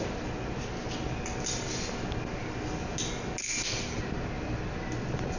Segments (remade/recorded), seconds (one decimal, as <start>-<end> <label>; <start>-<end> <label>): 0.0-3.4 recorded; 3.4-4.0 remade; 4.0-5.4 recorded